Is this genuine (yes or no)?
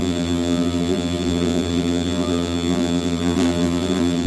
no